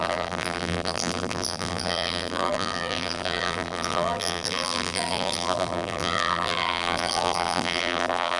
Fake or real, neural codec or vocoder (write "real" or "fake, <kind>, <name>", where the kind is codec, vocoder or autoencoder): fake, vocoder, BigVGAN v2